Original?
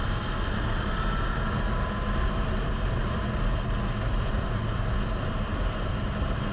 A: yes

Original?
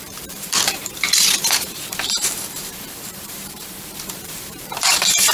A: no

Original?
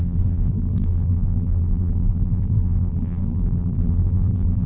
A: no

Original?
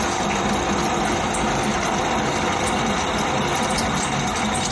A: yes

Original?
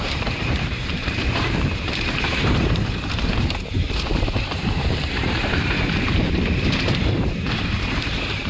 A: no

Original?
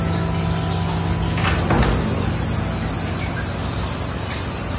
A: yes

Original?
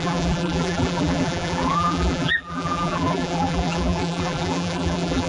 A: no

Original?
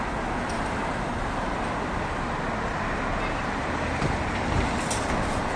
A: yes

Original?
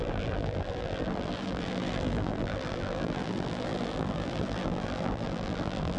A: no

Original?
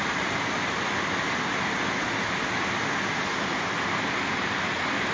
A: yes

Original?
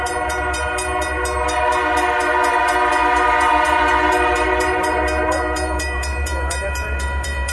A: no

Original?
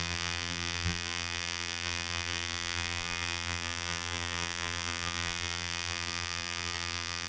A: no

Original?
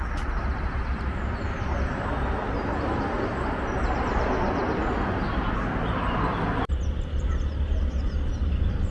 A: yes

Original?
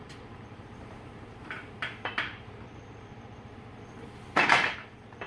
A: no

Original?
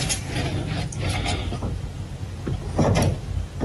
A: yes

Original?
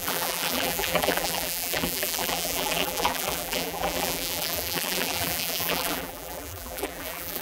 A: no